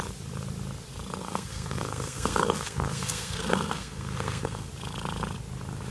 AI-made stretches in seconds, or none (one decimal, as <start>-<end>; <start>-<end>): 1.2-4.7